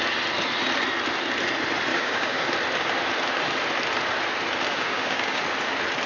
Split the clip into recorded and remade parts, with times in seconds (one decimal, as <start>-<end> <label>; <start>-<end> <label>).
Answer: 0.0-1.9 recorded; 1.9-2.4 remade; 2.4-4.7 recorded; 4.7-5.4 remade; 5.4-6.1 recorded